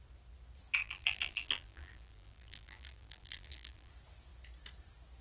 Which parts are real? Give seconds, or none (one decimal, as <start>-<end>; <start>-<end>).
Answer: 0.0-0.8; 3.9-5.2

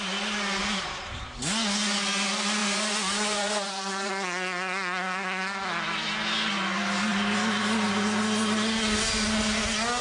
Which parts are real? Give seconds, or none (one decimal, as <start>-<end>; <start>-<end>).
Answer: 0.0-0.6; 1.2-2.6; 4.1-10.0

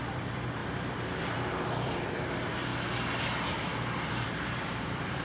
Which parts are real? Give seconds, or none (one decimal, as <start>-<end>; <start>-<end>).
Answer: 2.7-3.6

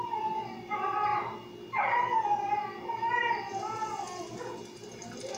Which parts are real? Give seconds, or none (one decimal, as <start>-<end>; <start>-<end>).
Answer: 0.0-5.4

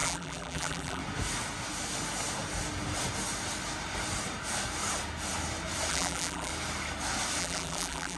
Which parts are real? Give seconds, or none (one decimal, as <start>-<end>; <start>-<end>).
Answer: 1.0-5.9; 6.5-7.4

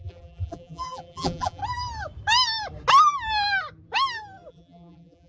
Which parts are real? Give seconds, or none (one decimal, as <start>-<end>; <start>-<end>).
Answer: 1.6-4.5

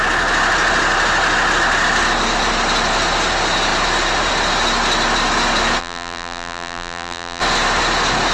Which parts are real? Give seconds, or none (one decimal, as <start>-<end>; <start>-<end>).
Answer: 0.0-5.8; 7.4-8.3

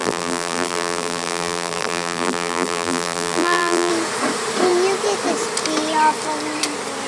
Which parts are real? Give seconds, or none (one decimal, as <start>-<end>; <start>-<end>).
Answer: 3.9-7.1